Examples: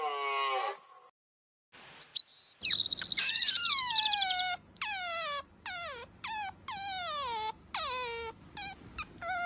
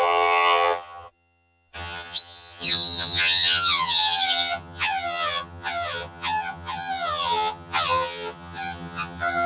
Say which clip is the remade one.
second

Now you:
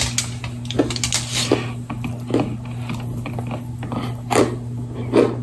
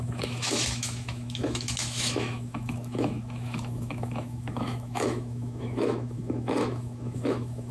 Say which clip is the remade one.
second